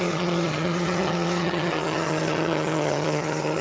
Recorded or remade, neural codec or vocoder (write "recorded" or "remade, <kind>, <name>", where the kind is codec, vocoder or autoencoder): remade, vocoder, HiFi-GAN